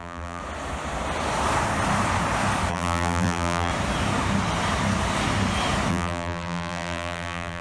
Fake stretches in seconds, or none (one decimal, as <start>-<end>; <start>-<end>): 0.0-0.4; 2.7-3.7; 5.9-7.6